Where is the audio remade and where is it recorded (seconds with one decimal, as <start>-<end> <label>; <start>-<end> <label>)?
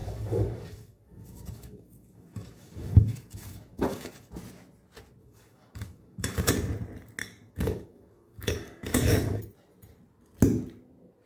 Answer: 0.0-4.3 remade; 4.3-5.2 recorded; 5.2-6.5 remade; 6.5-7.2 recorded; 7.2-9.4 remade; 9.4-11.3 recorded